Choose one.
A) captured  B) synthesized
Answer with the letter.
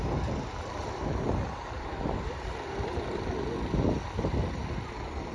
A